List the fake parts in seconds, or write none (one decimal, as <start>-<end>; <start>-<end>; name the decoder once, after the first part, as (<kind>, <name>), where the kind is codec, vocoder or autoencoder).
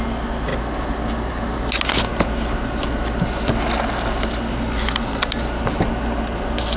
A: none